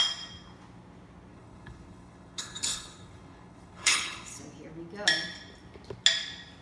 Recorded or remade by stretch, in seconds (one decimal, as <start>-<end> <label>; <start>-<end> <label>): 0.0-1.3 recorded; 1.3-4.4 remade; 4.4-6.6 recorded